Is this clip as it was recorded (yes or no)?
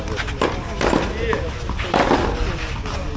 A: yes